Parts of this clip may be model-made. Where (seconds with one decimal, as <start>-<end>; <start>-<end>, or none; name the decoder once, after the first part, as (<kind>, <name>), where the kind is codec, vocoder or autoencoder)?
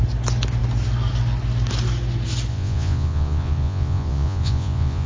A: 2.5-5.1 (vocoder, Vocos)